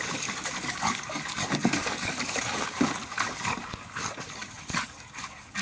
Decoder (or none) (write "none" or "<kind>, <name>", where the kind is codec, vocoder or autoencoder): codec, DAC